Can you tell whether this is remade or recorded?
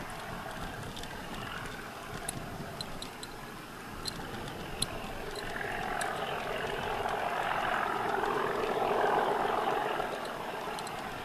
recorded